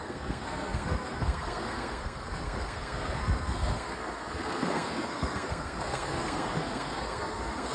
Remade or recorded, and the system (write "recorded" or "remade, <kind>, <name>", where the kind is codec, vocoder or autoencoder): remade, codec, SNAC